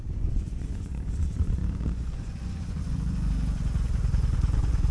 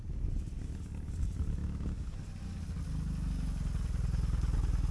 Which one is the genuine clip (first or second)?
second